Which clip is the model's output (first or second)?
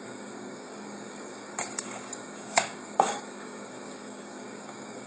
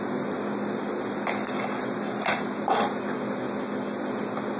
first